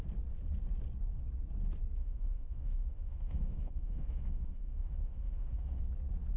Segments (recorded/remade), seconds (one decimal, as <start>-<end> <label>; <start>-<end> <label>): 0.0-2.0 recorded; 2.0-5.8 remade; 5.8-6.4 recorded